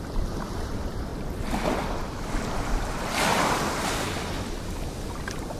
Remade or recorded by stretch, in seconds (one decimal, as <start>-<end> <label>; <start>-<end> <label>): 0.0-1.1 remade; 1.1-2.4 recorded; 2.4-5.6 remade